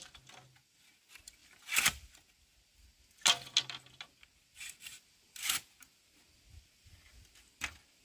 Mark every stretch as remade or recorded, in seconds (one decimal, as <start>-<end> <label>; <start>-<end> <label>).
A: 0.0-8.0 recorded